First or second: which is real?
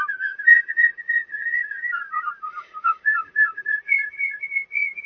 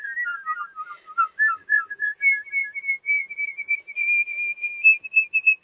second